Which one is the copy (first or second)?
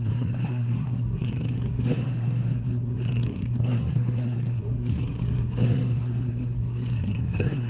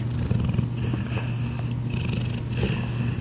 first